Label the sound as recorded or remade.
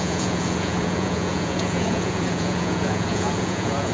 remade